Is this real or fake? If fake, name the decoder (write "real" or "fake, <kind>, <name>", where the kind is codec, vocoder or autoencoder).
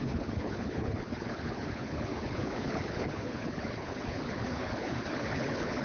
fake, codec, HILCodec